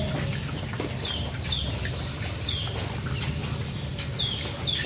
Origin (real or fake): real